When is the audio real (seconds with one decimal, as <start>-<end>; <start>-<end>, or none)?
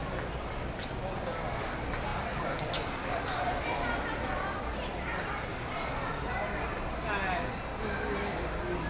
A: 1.0-2.1; 5.3-8.9